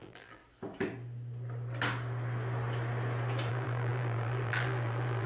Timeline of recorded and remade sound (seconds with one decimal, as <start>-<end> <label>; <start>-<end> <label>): 0.0-0.4 remade; 0.4-3.5 recorded; 3.5-5.3 remade